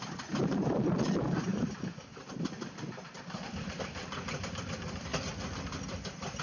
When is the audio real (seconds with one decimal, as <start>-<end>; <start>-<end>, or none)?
5.1-6.4